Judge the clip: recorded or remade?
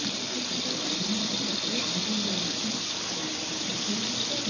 recorded